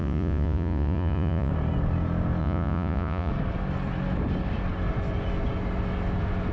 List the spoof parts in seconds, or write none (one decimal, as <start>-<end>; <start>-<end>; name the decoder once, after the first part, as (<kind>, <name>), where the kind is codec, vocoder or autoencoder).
0.0-1.5 (vocoder, Vocos); 2.4-3.3